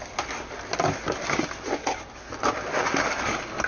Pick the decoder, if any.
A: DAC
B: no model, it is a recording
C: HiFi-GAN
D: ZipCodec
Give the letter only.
B